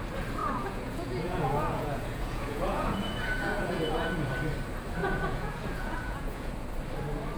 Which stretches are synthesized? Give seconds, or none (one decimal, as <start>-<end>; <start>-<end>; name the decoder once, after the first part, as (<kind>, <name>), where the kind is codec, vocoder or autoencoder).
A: 0.4-4.3 (vocoder, Vocos); 5.0-6.5